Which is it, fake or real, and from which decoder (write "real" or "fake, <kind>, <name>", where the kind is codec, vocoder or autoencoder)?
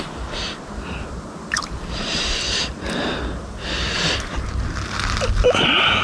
real